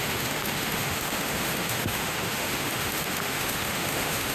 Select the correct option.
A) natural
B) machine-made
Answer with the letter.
B